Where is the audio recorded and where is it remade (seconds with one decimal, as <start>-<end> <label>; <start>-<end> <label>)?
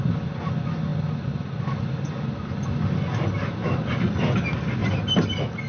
0.0-5.7 recorded